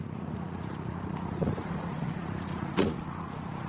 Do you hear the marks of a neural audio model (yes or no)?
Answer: yes